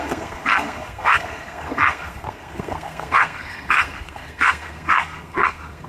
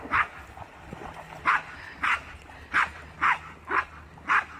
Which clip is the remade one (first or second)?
first